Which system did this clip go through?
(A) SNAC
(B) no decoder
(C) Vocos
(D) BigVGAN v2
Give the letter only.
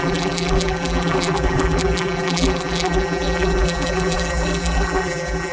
D